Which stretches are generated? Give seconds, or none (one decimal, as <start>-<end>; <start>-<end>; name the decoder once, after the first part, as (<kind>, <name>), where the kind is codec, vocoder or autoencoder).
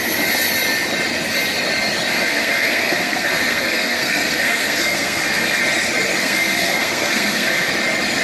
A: 2.1-5.6 (codec, SNAC); 6.2-7.7